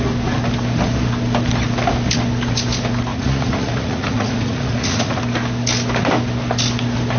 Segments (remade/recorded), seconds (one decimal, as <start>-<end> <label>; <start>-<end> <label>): 0.0-3.1 recorded; 3.1-5.2 remade; 5.2-7.2 recorded